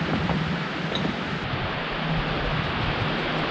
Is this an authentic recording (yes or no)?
yes